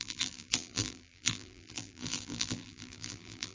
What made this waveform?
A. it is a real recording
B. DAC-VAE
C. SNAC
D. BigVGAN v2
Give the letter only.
D